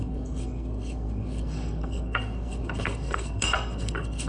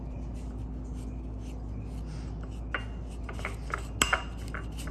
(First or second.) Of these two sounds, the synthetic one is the first